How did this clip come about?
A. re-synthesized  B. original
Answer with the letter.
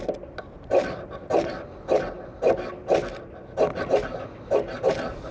B